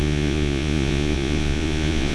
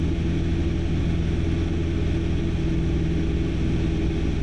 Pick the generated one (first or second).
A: first